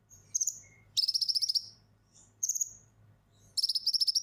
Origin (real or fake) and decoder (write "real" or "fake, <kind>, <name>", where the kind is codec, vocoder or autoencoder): fake, vocoder, BigVGAN v2